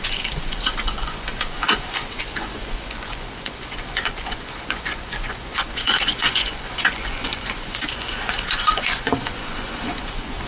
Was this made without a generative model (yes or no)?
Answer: no